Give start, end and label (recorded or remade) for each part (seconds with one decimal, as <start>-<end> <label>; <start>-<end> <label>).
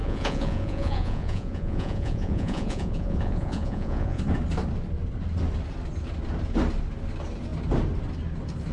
0.0-4.2 remade; 4.2-8.7 recorded